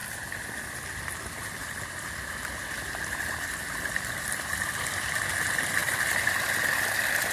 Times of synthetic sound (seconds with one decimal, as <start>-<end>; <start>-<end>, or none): 5.8-6.7